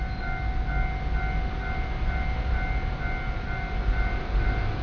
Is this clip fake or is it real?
real